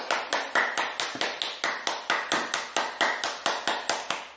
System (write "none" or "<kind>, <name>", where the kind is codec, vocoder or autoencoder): none